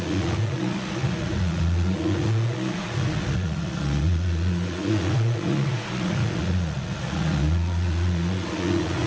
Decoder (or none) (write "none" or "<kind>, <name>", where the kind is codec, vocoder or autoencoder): vocoder, Vocos